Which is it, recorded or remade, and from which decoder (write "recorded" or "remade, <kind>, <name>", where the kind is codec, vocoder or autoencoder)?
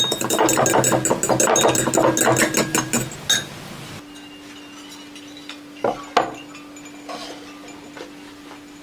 recorded